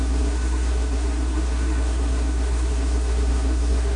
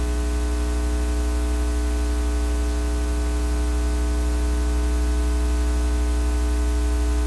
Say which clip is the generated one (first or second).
first